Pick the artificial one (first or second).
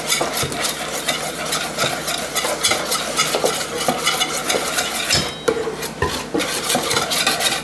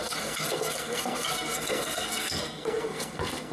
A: second